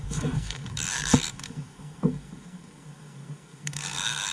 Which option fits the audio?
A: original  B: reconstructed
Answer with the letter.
B